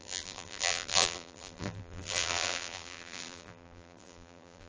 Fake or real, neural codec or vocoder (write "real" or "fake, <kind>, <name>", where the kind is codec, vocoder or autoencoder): fake, vocoder, BigVGAN v2